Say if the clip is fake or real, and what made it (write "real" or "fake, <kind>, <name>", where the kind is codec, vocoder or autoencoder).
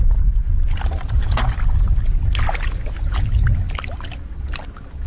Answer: real